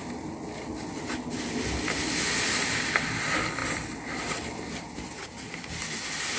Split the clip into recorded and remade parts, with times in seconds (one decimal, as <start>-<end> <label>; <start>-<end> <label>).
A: 0.0-6.4 recorded